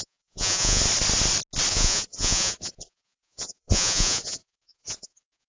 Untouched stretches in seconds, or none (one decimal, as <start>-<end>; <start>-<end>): 0.8-1.7